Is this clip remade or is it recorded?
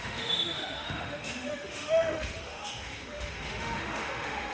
remade